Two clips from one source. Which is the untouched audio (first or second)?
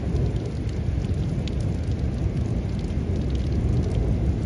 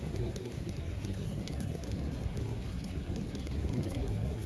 first